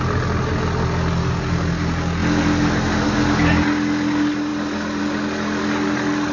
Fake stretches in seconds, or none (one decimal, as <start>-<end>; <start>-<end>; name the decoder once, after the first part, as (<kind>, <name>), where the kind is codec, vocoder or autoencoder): none